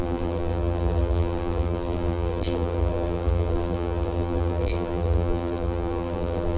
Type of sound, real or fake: fake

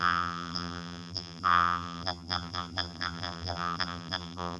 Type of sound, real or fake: fake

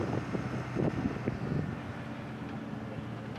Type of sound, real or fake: real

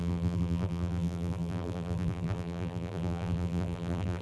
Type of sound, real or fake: fake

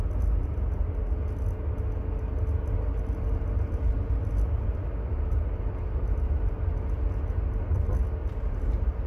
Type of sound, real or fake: real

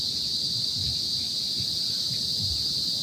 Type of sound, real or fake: real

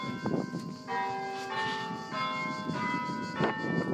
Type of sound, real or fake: real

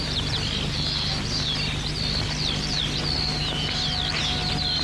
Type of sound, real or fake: real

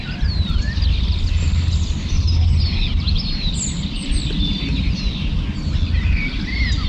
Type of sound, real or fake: real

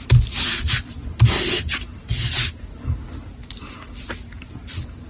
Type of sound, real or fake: fake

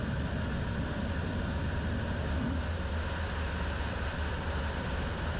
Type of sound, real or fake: real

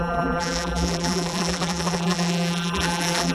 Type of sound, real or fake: fake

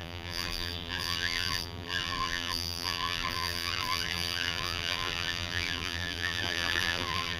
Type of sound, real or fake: fake